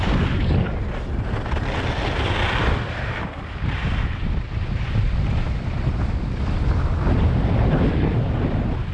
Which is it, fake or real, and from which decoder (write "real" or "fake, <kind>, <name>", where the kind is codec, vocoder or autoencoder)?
real